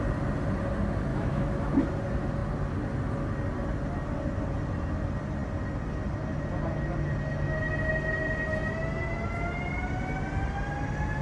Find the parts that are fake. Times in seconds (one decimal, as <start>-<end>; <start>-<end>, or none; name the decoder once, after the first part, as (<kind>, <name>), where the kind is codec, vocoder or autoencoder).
1.1-1.8 (autoencoder, DAC-VAE)